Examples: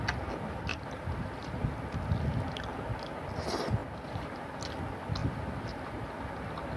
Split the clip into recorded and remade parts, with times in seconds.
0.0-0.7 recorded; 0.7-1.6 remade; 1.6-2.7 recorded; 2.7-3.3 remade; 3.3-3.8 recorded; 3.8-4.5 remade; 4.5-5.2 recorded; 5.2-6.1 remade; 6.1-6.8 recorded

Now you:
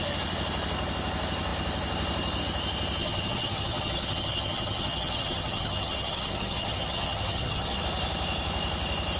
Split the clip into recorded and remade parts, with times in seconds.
0.0-3.0 recorded; 3.0-7.8 remade; 7.8-9.2 recorded

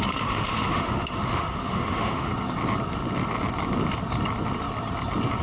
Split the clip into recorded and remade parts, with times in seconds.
0.0-2.3 remade; 2.3-5.4 recorded

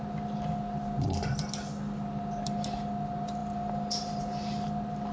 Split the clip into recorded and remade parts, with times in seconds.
0.0-5.1 recorded